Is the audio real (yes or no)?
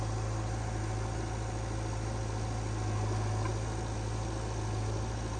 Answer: yes